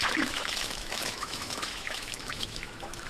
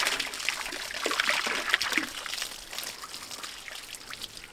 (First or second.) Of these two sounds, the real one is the second